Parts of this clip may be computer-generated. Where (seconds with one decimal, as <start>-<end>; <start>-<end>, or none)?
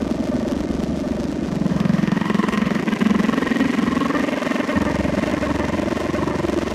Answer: 1.7-2.8